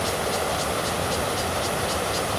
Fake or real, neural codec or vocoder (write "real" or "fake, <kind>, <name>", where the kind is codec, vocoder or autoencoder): real